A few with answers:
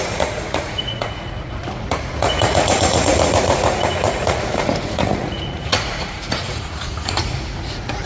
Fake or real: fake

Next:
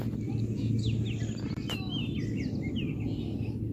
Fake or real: real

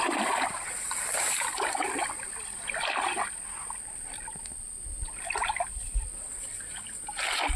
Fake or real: real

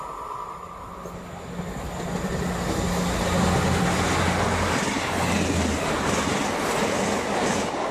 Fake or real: real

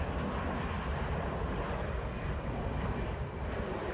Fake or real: real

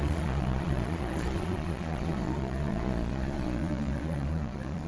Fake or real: fake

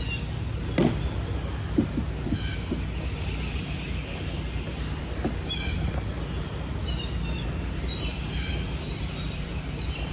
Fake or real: real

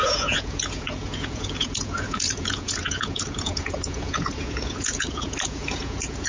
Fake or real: fake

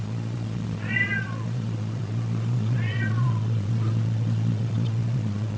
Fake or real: fake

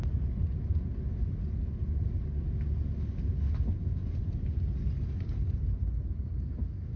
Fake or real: real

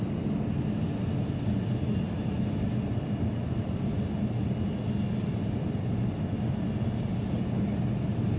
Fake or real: real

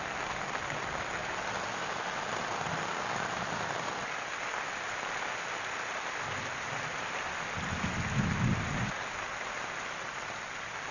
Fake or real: real